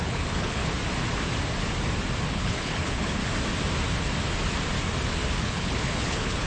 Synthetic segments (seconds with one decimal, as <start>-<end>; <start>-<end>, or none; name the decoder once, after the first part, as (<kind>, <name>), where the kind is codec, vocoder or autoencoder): 0.0-0.6 (codec, HILCodec); 2.3-3.2; 5.4-6.5